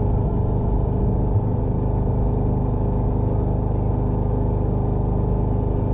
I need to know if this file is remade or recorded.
recorded